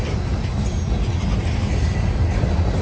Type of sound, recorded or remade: recorded